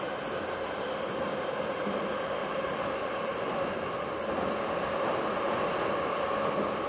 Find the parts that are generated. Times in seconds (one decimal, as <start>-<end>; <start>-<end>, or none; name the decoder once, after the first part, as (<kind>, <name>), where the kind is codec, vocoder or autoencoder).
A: 2.4-4.3 (vocoder, BigVGAN v2)